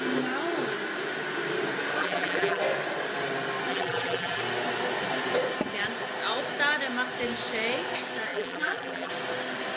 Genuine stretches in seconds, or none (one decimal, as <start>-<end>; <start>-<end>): 0.0-2.0; 2.6-3.7; 4.4-8.3; 9.1-9.8